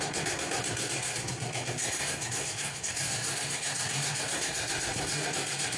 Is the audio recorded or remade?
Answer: remade